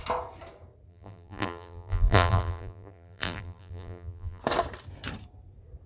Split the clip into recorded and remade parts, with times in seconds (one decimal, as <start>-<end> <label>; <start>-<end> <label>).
0.0-0.9 recorded; 0.9-4.4 remade; 4.4-5.9 recorded